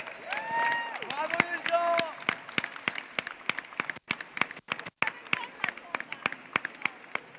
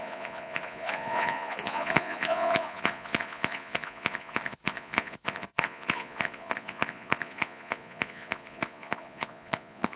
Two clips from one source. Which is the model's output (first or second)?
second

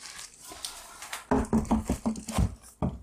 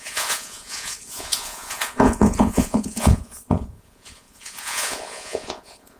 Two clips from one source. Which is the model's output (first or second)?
second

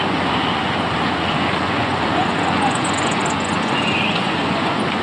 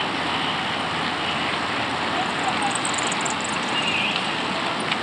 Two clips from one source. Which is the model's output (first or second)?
first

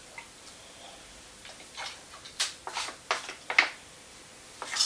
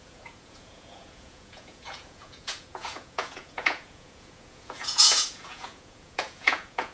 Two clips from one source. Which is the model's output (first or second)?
second